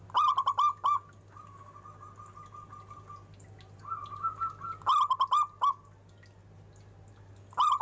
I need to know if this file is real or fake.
real